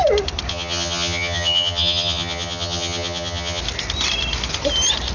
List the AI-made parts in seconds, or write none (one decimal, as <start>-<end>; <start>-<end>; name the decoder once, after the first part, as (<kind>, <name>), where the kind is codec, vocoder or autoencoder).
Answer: 0.5-3.6 (vocoder, HiFi-GAN)